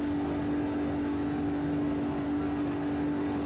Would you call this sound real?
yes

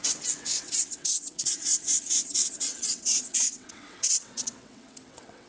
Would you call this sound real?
no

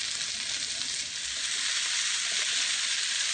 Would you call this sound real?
yes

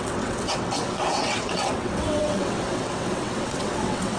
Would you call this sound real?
no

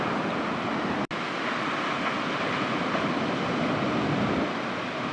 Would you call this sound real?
yes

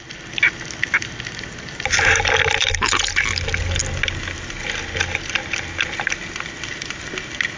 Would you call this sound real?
yes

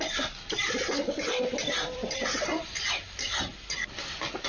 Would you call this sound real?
yes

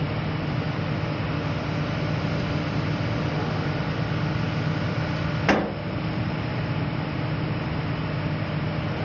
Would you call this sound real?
yes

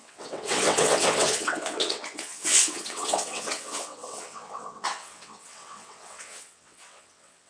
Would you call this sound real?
no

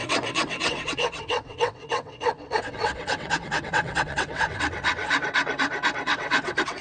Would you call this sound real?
no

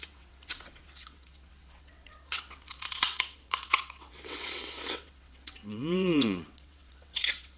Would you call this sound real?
no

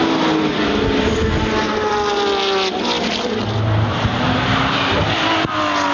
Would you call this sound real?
yes